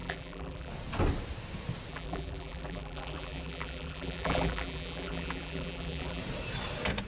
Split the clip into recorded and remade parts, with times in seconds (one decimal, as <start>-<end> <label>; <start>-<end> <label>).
0.0-0.7 remade; 0.7-1.9 recorded; 1.9-6.2 remade; 6.2-7.1 recorded